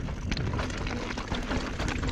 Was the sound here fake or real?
real